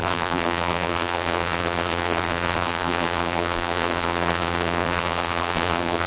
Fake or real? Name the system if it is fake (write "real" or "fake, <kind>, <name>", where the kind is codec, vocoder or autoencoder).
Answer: fake, vocoder, BigVGAN v2